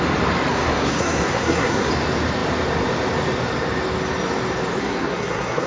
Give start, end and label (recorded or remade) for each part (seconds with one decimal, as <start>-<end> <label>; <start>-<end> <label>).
0.0-0.5 recorded; 0.5-1.9 remade; 1.9-4.8 recorded; 4.8-5.7 remade